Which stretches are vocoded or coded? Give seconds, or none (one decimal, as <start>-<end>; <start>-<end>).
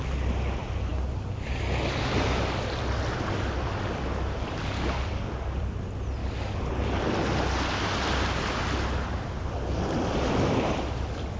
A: 4.6-5.6; 6.2-6.7